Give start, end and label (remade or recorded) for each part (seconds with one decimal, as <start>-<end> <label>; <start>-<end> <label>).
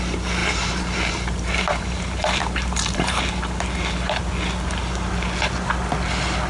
0.0-0.4 recorded; 0.4-3.2 remade; 3.2-6.5 recorded